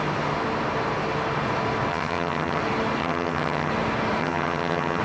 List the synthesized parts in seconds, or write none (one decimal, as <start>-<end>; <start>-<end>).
1.9-2.6; 3.0-3.7; 4.2-5.0